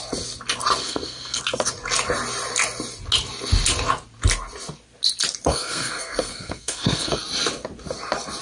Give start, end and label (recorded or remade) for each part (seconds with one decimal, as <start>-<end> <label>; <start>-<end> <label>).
0.0-0.8 recorded; 0.8-1.4 remade; 1.4-5.5 recorded; 5.5-7.2 remade; 7.2-8.4 recorded

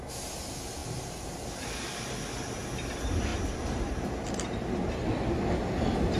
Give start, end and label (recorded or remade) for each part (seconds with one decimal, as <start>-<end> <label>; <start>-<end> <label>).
0.0-6.2 recorded